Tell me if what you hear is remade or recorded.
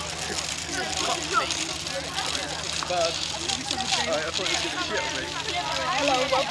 recorded